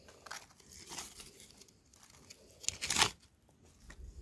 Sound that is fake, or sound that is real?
real